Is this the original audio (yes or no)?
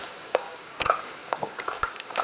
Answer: no